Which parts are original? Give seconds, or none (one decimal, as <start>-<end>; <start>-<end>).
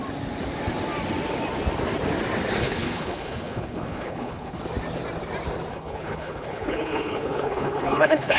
0.0-2.6; 4.6-5.7